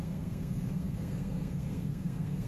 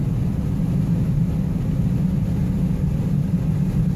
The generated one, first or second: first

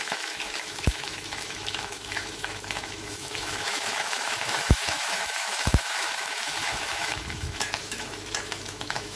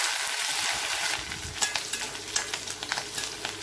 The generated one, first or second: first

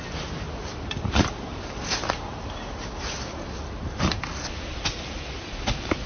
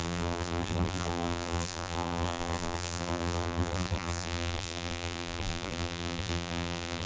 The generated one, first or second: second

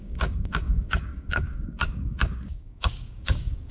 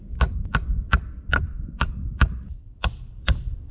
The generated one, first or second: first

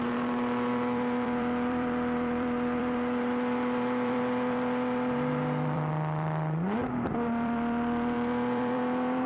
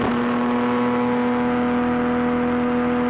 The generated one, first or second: first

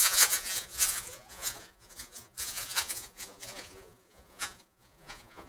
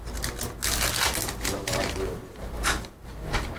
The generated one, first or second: first